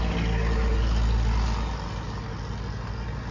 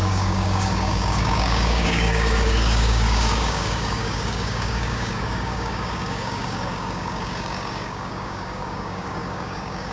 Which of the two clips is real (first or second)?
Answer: first